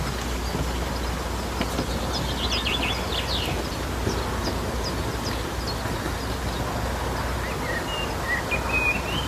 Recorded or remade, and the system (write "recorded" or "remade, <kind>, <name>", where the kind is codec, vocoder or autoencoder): recorded